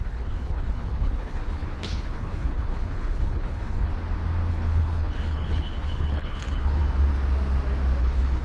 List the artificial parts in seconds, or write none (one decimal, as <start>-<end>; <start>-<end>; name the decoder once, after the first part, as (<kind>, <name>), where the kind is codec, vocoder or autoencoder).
0.0-3.9 (codec, HILCodec); 4.5-6.8; 8.0-8.4